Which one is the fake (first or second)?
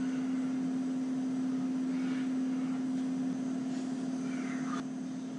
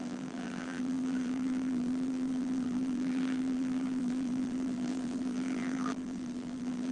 second